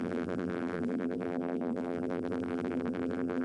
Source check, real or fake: fake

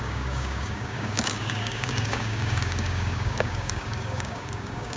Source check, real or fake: fake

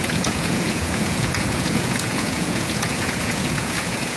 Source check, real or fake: fake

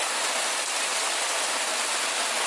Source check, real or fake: real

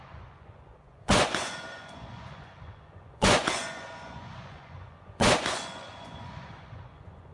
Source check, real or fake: fake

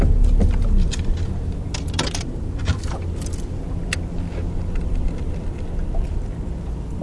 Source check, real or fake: real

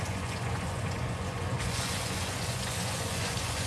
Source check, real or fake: fake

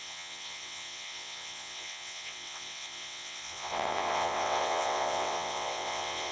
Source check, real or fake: fake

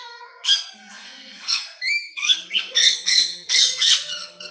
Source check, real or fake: fake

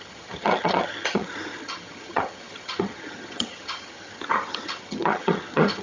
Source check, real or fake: fake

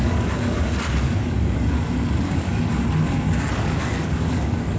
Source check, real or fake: fake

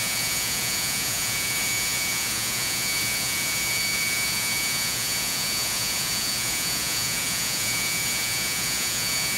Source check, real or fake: fake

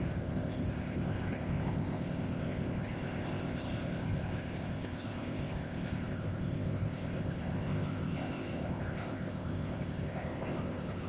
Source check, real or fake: fake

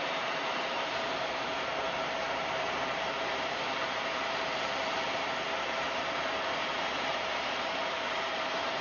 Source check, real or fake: fake